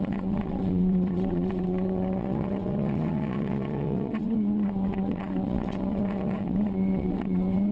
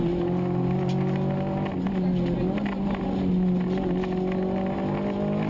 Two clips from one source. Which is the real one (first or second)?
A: second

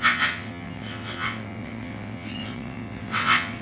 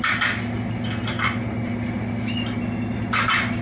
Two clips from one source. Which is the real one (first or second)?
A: second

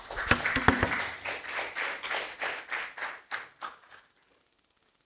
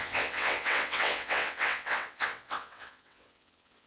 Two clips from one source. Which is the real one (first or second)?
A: first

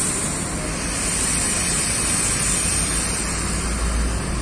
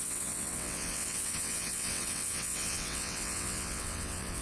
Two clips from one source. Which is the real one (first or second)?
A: first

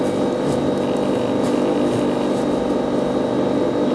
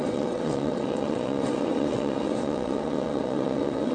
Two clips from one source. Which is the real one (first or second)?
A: first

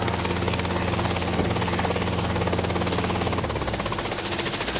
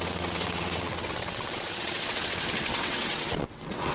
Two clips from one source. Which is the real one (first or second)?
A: first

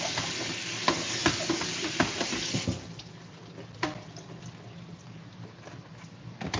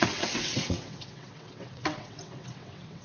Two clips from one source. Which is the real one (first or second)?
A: first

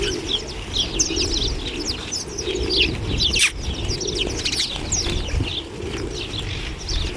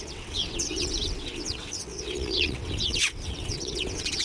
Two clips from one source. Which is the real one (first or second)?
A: first